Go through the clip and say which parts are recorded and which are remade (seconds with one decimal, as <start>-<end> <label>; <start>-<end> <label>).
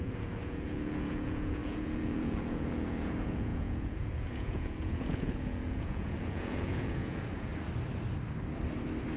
0.0-7.5 remade; 7.5-9.2 recorded